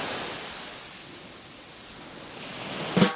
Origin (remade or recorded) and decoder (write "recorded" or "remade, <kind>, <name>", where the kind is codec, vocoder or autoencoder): recorded